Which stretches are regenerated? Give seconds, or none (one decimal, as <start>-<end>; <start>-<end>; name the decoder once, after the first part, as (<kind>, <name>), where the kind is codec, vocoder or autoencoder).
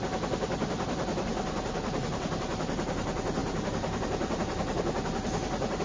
none